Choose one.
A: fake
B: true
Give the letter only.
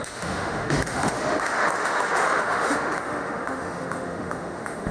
A